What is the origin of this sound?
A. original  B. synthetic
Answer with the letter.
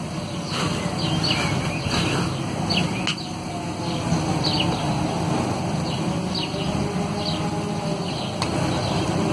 A